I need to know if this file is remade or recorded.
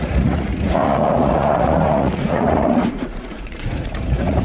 remade